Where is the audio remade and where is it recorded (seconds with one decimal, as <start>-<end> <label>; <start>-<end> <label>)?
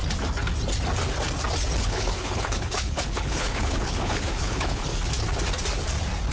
0.0-1.8 recorded; 1.8-4.9 remade; 4.9-6.3 recorded